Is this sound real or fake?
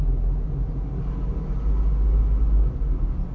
real